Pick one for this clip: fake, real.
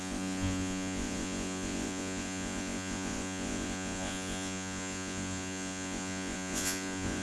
fake